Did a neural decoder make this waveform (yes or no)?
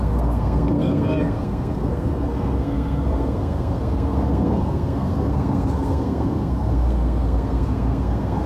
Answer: yes